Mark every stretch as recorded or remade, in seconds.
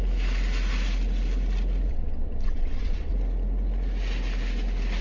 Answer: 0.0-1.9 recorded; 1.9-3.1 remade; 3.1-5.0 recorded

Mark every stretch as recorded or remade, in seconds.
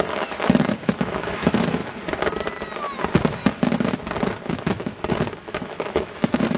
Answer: 0.0-1.8 remade; 1.8-4.5 recorded; 4.5-6.6 remade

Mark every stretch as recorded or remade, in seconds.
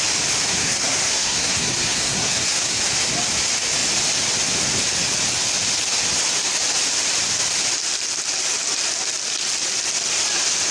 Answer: 0.0-0.5 recorded; 0.5-2.8 remade; 2.8-10.7 recorded